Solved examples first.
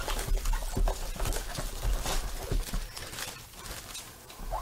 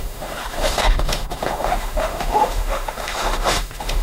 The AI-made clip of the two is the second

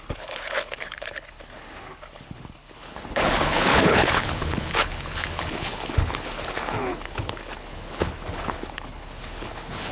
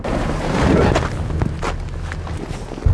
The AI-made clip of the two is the first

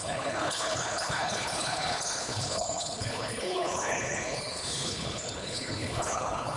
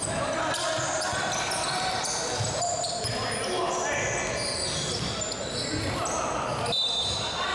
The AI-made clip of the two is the first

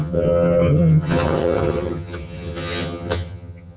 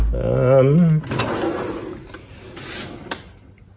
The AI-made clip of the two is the first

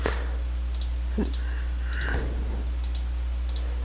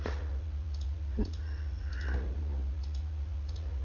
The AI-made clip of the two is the second